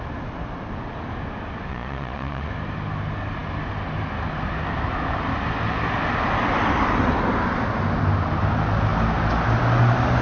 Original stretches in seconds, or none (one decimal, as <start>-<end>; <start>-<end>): 0.0-1.7; 2.5-10.2